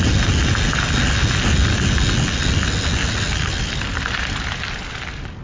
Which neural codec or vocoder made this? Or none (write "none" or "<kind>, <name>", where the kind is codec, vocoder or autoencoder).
none